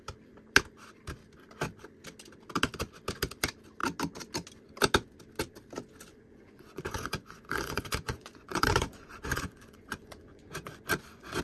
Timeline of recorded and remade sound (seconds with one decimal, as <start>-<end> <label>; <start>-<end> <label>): 0.0-6.1 recorded; 6.1-11.4 remade